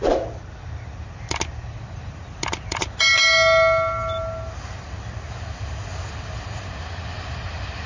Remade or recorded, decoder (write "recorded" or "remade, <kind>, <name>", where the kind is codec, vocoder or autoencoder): recorded